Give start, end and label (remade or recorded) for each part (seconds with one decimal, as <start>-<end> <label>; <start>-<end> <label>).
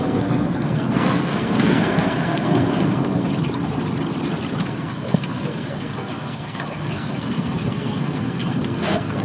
0.0-3.3 remade; 3.3-4.6 recorded; 4.6-9.2 remade